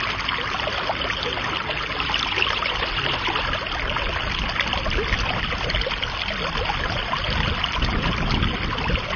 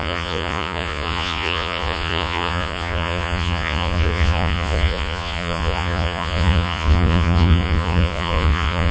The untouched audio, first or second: first